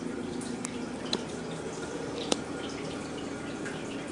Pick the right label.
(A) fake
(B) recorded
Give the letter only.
A